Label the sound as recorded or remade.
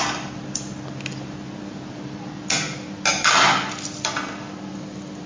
recorded